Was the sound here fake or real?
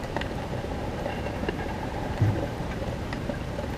fake